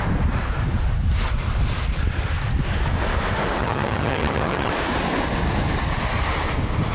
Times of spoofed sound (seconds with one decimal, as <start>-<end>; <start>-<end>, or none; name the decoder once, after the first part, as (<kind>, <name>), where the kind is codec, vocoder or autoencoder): 3.6-4.7 (vocoder, HiFi-GAN)